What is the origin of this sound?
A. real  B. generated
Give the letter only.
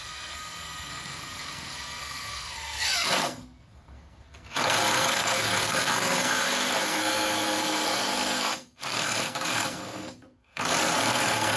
B